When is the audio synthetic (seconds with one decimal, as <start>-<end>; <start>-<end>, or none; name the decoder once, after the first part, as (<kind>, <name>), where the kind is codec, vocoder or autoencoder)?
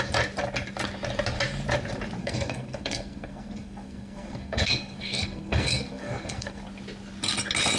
2.2-6.6 (codec, SNAC)